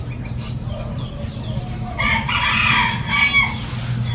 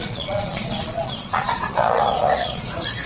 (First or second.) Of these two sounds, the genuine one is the first